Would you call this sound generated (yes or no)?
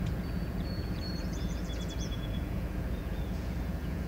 yes